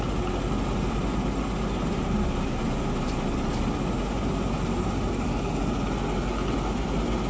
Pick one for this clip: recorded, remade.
recorded